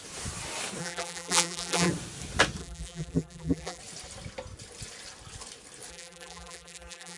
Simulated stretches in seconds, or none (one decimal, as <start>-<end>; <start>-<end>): 0.8-1.9; 2.6-3.8; 5.9-7.2